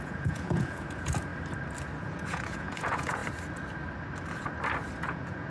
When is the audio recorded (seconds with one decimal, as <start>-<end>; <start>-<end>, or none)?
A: 1.3-2.0; 3.2-5.0